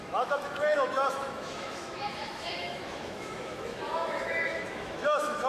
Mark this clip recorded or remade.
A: remade